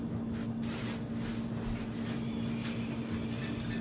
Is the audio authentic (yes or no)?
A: yes